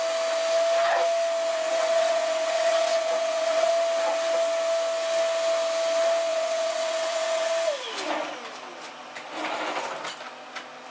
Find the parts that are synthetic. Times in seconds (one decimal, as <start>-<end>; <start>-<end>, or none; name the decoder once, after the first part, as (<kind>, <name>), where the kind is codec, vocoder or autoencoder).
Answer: 1.5-3.7 (vocoder, WaveNeXt); 6.3-7.5